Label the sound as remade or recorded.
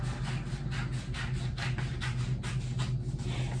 recorded